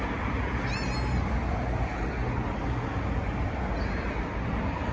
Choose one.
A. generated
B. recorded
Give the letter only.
B